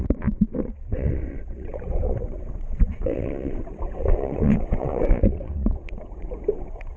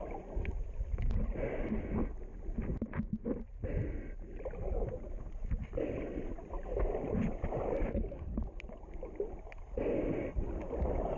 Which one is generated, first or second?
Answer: first